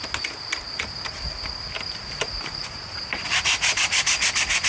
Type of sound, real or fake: real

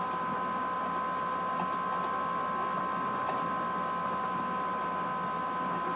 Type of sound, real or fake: real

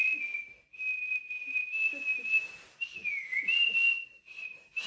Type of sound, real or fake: real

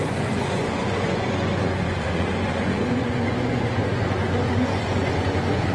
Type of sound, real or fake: fake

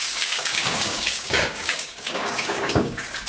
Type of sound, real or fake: fake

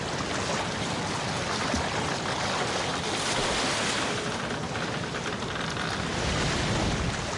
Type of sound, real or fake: real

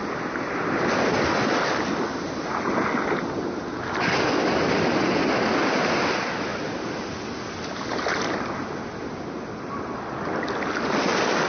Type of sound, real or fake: real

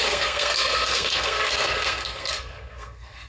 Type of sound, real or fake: fake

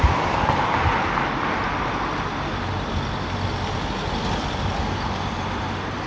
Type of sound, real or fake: real